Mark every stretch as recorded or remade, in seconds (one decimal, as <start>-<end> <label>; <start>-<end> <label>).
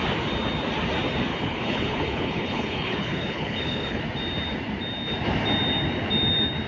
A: 0.0-1.3 recorded; 1.3-4.0 remade; 4.0-6.7 recorded